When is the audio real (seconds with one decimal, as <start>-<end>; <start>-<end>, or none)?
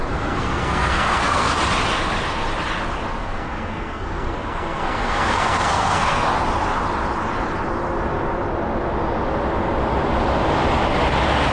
1.6-3.2; 6.3-11.5